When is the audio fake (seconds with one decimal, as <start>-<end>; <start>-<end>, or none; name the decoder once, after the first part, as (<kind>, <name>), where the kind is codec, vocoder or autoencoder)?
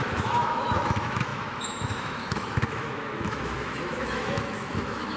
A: 0.0-5.2 (autoencoder, DAC-VAE)